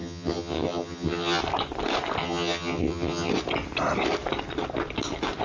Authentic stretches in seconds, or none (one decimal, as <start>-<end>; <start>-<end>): 1.4-2.2; 3.3-5.4